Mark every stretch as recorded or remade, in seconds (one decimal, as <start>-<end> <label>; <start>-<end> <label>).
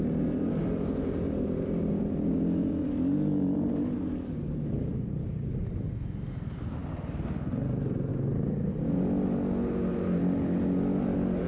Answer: 0.0-8.1 recorded; 8.1-8.7 remade; 8.7-11.5 recorded